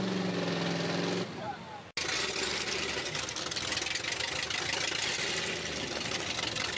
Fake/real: real